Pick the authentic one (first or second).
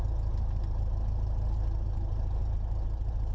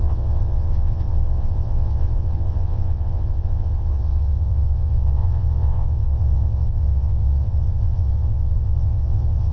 first